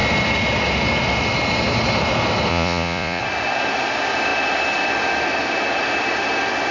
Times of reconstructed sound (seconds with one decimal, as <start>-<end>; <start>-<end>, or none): 2.5-3.2